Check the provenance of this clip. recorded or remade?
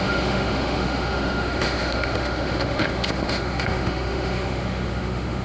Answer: remade